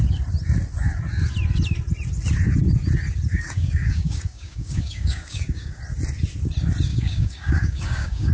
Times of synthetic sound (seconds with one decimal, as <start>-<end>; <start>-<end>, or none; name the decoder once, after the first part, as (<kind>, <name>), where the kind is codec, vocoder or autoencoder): 3.3-5.8 (codec, DAC); 6.9-8.3